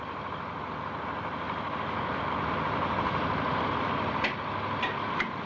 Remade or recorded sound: recorded